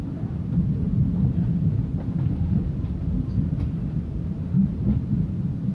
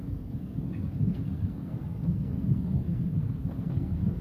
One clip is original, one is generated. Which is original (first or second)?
first